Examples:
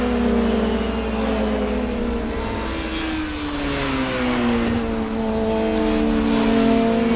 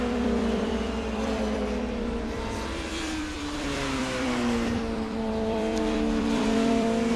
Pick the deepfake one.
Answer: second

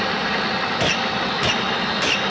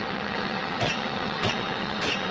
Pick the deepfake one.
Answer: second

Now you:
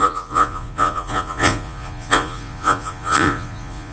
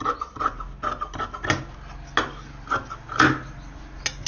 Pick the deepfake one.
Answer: first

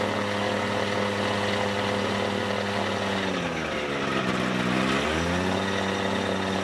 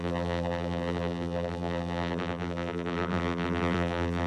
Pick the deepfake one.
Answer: second